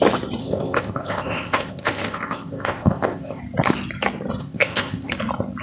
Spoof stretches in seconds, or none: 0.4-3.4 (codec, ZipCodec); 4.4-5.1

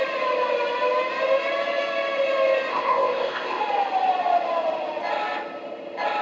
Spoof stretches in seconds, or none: 2.7-3.6 (codec, ZipCodec)

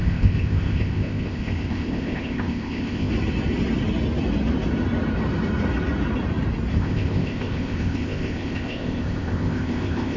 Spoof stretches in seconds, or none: 0.0-3.1 (codec, ZipCodec); 6.7-10.2

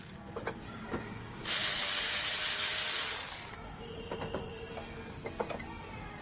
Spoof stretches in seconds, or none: none

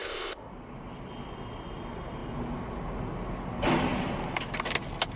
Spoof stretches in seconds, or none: 0.0-0.5 (codec, ZipCodec)

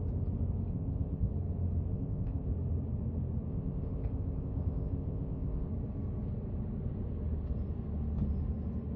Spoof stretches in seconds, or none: 0.7-1.3 (codec, ZipCodec); 1.9-2.5; 3.5-5.7

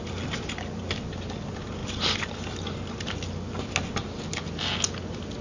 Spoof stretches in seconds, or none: none

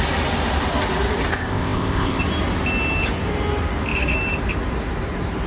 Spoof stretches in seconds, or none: 1.3-2.2 (codec, ZipCodec)